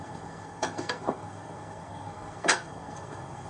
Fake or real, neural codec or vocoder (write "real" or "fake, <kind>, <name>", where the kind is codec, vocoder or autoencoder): fake, codec, SNAC